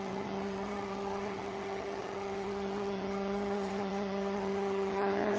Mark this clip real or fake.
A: fake